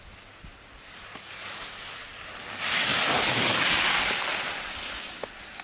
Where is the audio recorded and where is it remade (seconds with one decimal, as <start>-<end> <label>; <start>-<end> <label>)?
0.0-5.6 recorded